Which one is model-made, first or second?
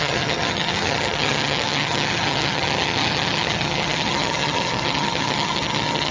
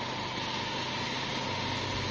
first